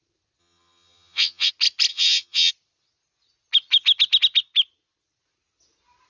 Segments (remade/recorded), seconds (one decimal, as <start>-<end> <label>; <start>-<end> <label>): 0.0-0.4 recorded; 0.4-1.5 remade; 1.5-1.9 recorded; 1.9-2.5 remade; 2.5-6.1 recorded